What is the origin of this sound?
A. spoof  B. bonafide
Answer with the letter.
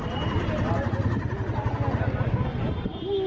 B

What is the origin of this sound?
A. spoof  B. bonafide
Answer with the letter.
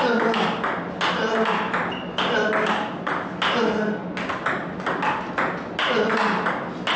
B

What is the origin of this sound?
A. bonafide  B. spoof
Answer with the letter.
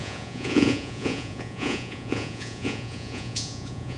B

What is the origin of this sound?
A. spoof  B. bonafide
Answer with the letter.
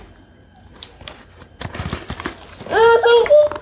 A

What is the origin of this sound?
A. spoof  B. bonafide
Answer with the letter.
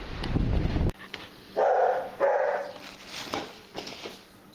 B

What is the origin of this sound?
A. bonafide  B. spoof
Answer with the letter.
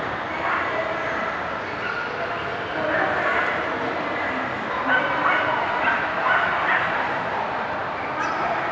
A